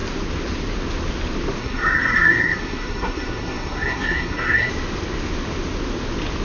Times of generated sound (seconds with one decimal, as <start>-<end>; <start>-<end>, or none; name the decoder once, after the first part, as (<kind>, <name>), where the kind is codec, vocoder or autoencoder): 1.6-4.7 (codec, SNAC)